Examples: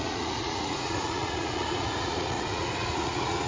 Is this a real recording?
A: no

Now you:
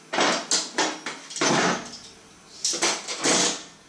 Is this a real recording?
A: yes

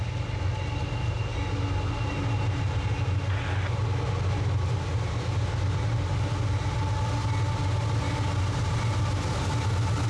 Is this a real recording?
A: yes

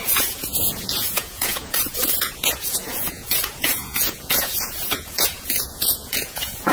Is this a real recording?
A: no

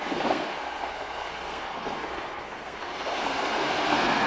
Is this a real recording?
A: no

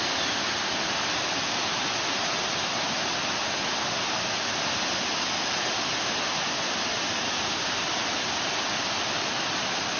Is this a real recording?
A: yes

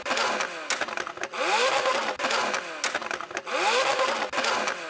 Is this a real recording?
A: yes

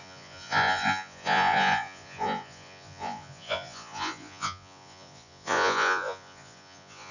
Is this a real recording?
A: no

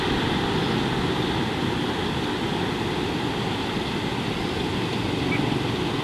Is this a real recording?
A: yes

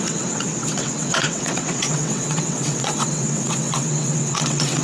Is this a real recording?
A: no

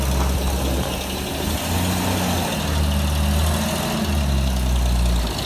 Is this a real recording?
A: yes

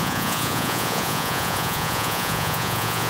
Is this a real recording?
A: no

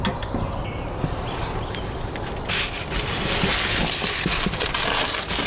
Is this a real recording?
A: yes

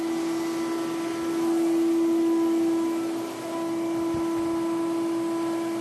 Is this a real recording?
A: yes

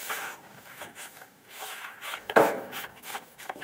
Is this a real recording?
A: no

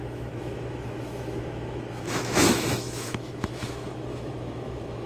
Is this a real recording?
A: no